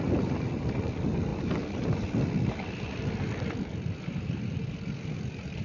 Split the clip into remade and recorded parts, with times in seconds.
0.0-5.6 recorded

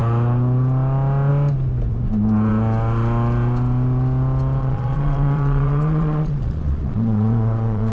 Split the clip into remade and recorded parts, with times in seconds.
0.0-4.6 recorded; 4.6-7.9 remade

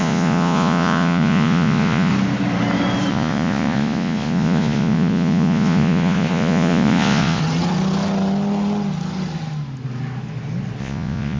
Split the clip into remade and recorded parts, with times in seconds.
0.0-2.1 remade; 2.1-3.1 recorded; 3.1-7.4 remade; 7.4-10.8 recorded; 10.8-11.4 remade

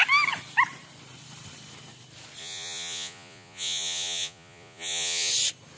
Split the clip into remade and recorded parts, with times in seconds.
0.0-2.4 recorded; 2.4-5.3 remade; 5.3-5.8 recorded